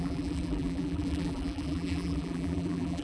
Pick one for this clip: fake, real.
fake